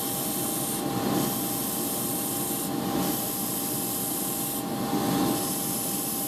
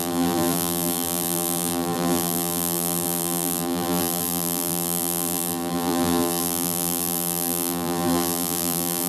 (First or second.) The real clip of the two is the first